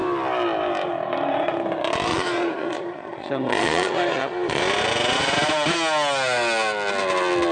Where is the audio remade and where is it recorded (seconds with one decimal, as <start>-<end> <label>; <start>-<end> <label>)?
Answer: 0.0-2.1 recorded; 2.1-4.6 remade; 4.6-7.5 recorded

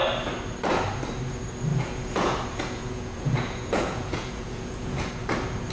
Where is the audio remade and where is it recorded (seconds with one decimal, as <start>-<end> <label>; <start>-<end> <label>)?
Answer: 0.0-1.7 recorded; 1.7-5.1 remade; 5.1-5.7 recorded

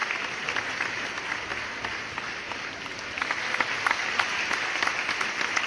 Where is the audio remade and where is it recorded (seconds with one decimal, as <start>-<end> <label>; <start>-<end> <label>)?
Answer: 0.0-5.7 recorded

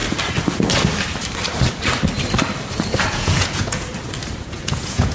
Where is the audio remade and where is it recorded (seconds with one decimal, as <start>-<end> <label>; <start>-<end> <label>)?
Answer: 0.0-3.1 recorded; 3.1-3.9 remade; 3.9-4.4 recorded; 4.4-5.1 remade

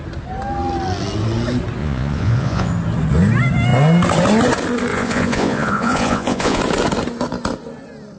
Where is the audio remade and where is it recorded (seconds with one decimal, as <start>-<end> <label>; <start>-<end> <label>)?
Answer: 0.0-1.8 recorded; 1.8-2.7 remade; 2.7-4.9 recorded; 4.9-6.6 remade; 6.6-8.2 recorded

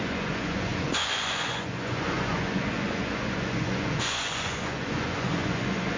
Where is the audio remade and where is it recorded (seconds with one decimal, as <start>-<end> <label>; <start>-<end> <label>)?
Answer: 0.0-6.0 remade

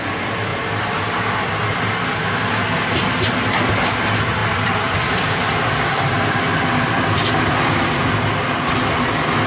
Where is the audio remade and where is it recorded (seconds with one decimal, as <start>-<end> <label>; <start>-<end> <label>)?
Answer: 0.0-4.4 recorded; 4.4-6.5 remade; 6.5-9.5 recorded

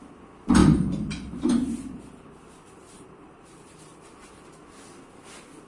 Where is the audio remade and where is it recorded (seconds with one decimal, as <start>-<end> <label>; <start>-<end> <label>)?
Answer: 0.0-0.6 recorded; 0.6-4.0 remade; 4.0-5.7 recorded